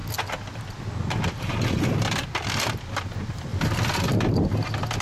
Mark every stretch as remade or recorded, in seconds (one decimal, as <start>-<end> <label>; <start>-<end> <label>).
0.0-5.0 recorded

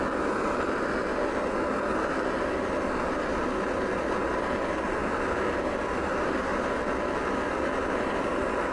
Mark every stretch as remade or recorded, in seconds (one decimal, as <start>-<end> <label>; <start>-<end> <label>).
0.0-8.7 recorded

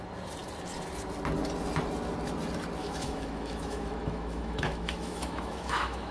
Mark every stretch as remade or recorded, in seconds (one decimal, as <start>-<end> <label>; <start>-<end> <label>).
0.0-2.8 recorded; 2.8-6.1 remade

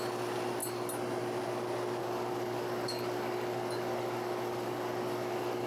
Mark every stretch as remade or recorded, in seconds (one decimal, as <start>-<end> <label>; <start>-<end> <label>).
0.0-2.0 recorded; 2.0-5.7 remade

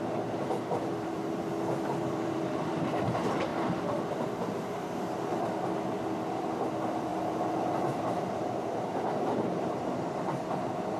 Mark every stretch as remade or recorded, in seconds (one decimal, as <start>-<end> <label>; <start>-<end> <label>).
0.0-5.3 remade; 5.3-6.1 recorded; 6.1-11.0 remade